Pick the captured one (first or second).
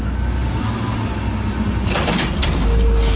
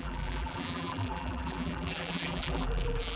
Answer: first